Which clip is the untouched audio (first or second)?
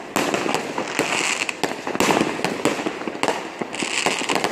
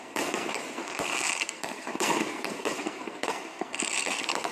first